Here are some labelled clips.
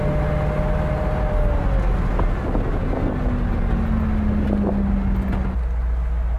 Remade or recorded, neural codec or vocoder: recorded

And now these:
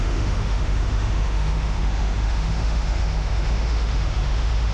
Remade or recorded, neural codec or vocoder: remade, autoencoder, DAC-VAE